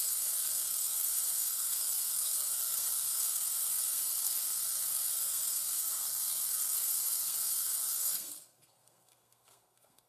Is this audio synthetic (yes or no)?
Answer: yes